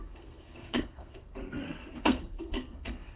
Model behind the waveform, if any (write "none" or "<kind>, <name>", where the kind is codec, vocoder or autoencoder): codec, SNAC